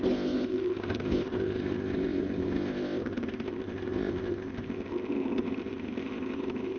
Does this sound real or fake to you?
fake